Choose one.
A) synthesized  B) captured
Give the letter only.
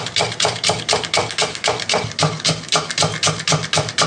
B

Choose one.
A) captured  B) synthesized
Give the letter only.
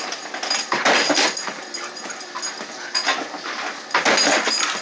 A